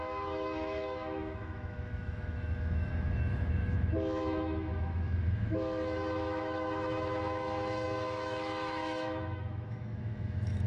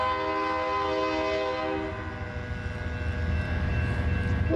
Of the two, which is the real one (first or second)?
second